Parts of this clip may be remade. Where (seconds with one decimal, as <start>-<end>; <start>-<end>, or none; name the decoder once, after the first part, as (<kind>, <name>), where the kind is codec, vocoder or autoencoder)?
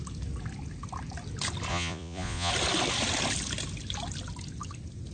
1.7-2.5 (vocoder, Vocos)